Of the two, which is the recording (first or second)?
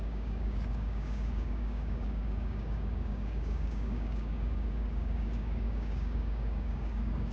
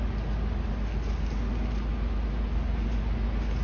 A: second